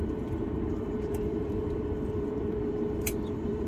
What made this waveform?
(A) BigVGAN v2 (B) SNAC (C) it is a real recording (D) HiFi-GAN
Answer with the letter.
A